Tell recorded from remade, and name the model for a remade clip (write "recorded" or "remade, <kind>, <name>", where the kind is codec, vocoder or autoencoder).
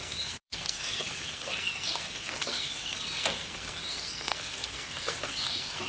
remade, codec, SNAC